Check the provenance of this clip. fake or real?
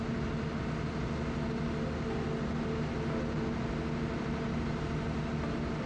real